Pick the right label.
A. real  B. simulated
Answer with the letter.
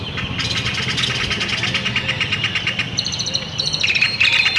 A